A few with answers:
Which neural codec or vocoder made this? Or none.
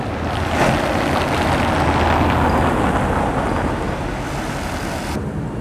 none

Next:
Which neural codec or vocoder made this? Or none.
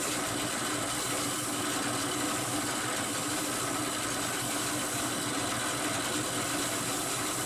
none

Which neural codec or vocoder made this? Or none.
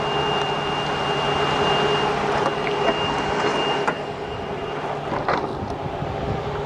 none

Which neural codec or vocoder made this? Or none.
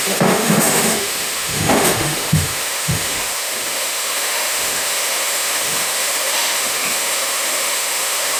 autoencoder, DAC-VAE